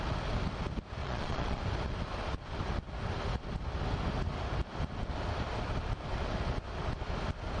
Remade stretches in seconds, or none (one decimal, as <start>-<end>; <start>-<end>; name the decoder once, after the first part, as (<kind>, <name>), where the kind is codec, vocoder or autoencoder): 1.0-1.6 (vocoder, Vocos)